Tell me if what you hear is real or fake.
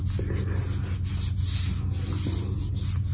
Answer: real